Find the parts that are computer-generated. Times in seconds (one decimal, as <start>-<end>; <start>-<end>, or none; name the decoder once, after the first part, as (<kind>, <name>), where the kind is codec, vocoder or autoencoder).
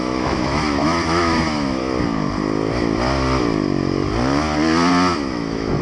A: 0.0-1.8 (autoencoder, DAC-VAE); 5.3-5.8